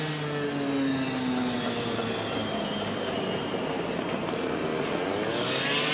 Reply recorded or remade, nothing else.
recorded